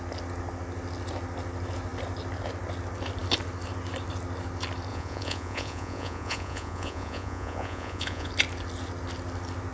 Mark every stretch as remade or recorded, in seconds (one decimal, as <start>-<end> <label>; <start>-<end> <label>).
0.0-4.9 recorded; 4.9-8.3 remade; 8.3-9.7 recorded